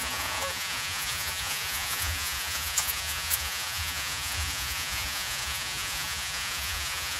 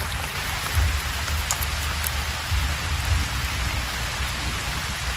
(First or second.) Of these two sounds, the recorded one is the second